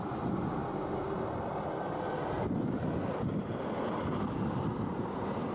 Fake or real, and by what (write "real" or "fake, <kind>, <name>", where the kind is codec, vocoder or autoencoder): real